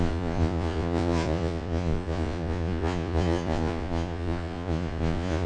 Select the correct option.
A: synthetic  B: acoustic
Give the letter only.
A